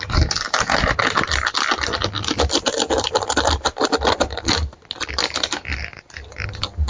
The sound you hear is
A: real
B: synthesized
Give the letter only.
A